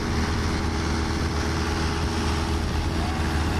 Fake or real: real